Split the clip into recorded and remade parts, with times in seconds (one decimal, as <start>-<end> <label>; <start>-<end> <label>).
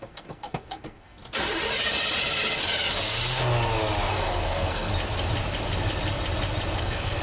0.0-1.2 remade; 1.2-4.1 recorded; 4.1-4.9 remade; 4.9-6.8 recorded; 6.8-7.2 remade